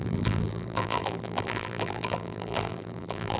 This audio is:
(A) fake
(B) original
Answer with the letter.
A